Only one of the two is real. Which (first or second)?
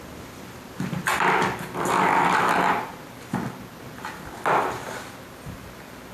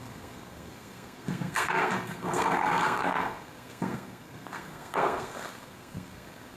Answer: first